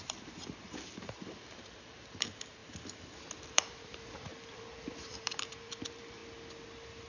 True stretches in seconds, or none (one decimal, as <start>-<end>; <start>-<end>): 2.6-3.4; 4.3-5.0; 6.2-7.1